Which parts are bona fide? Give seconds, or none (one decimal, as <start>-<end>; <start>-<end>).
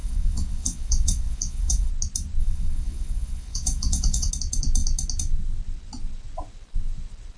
1.9-2.4; 4.3-7.4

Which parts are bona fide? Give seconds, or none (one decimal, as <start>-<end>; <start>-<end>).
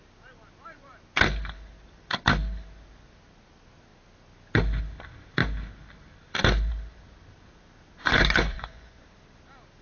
0.0-8.0; 9.0-9.8